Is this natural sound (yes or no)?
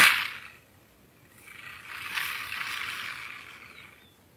yes